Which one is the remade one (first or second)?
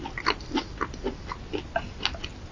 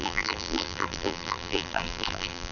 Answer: second